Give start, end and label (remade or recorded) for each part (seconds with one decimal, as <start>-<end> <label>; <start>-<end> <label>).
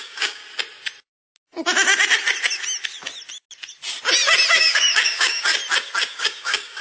0.0-0.4 remade; 0.4-4.5 recorded; 4.5-5.5 remade; 5.5-6.1 recorded; 6.1-6.8 remade